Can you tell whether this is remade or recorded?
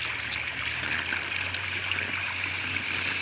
recorded